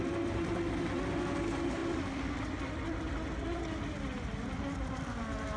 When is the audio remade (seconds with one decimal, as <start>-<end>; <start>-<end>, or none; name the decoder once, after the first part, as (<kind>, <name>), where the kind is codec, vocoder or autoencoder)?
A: none